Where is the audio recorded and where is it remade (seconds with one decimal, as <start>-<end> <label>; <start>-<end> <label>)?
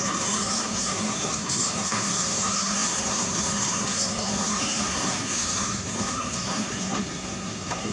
0.0-7.9 remade